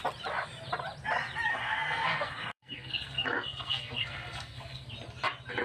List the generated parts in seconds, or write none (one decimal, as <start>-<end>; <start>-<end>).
1.5-4.9